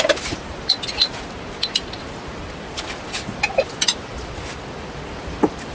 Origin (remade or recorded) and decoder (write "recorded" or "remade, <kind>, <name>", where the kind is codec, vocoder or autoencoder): recorded